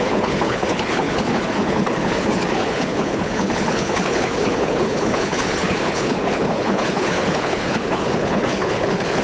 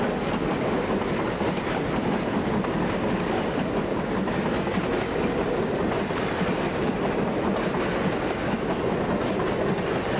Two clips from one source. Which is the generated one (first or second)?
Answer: first